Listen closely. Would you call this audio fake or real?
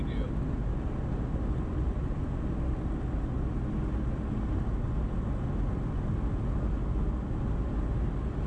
real